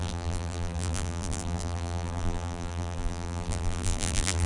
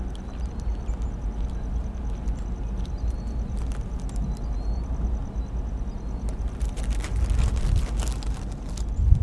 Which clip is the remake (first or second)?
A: first